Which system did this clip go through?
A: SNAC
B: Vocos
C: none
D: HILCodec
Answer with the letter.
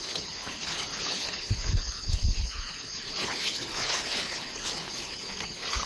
D